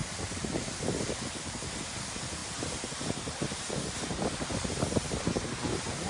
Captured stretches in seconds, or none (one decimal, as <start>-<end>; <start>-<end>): 0.8-2.4; 5.2-6.1